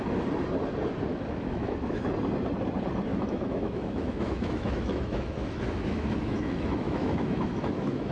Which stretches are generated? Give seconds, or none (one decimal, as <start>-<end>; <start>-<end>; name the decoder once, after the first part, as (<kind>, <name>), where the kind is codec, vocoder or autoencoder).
1.1-2.1 (autoencoder, DAC-VAE); 3.1-8.1